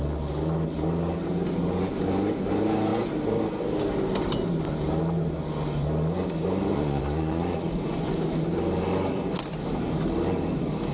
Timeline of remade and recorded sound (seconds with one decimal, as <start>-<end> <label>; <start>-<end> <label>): 0.0-6.7 recorded; 6.7-8.1 remade; 8.1-10.9 recorded